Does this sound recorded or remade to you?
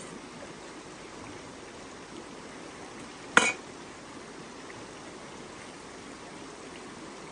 recorded